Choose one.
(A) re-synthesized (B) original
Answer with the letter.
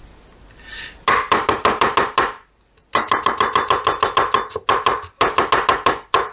B